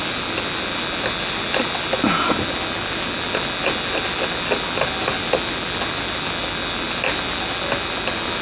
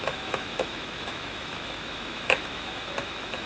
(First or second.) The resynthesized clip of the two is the second